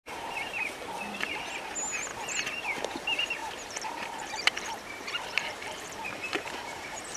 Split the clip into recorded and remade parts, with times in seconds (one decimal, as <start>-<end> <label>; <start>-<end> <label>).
0.0-3.4 recorded; 3.4-7.2 remade

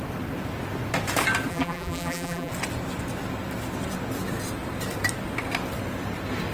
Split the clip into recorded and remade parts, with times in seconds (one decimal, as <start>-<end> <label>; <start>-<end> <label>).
0.0-1.5 recorded; 1.5-2.5 remade; 2.5-6.5 recorded

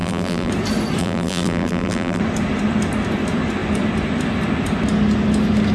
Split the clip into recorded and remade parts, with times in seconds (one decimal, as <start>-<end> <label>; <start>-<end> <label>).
0.0-0.5 remade; 0.5-1.0 recorded; 1.0-2.2 remade; 2.2-5.7 recorded

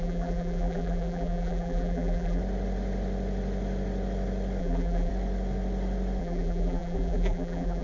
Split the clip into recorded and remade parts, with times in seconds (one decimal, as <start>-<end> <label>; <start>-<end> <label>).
0.0-2.4 remade; 2.4-4.6 recorded; 4.6-5.1 remade; 5.1-6.2 recorded; 6.2-7.8 remade